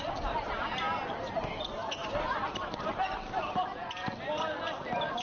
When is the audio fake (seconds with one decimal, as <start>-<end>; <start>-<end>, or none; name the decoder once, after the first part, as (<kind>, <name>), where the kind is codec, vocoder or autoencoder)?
2.0-5.2 (vocoder, BigVGAN v2)